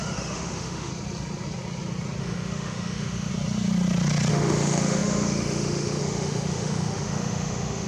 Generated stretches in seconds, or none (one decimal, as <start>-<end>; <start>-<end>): 0.0-0.9; 2.2-3.3; 4.3-7.9